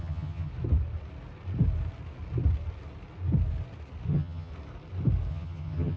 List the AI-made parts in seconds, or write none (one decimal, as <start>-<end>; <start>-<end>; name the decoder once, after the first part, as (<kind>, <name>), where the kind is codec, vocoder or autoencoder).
0.0-0.5 (vocoder, HiFi-GAN); 4.1-4.5; 5.3-6.0